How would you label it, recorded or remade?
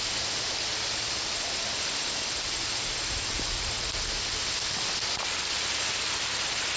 recorded